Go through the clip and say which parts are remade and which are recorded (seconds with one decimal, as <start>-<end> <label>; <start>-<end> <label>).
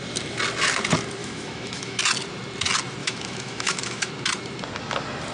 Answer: 0.0-1.2 recorded; 1.2-2.0 remade; 2.0-3.0 recorded; 3.0-4.1 remade; 4.1-5.3 recorded